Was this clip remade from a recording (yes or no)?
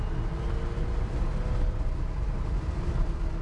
no